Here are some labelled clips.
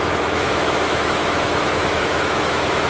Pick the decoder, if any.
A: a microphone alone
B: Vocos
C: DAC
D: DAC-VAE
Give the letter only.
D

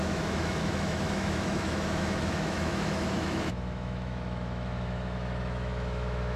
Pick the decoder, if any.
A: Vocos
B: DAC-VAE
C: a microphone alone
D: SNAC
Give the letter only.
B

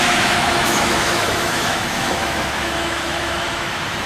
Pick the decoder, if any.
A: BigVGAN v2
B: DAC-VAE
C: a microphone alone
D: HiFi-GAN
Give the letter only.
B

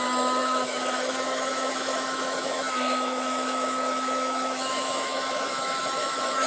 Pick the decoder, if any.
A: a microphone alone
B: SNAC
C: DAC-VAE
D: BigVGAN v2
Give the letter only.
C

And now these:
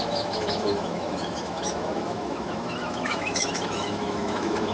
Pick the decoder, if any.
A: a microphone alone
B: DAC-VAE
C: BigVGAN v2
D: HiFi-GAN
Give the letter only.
B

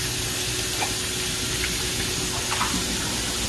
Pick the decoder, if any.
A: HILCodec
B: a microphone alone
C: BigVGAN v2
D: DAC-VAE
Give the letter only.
B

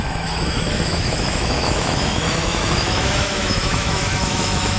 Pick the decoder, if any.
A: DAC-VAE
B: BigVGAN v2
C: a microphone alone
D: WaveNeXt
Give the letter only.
A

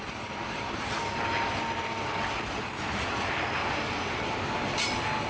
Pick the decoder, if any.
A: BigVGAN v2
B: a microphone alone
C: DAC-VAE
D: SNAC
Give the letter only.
B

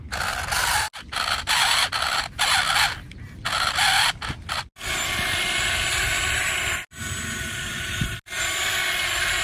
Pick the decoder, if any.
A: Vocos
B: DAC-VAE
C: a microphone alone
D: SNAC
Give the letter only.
C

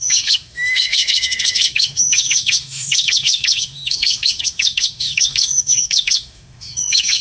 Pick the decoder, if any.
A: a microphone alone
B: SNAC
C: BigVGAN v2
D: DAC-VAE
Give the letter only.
D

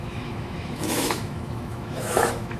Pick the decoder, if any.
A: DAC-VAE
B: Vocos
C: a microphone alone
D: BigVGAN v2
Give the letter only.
A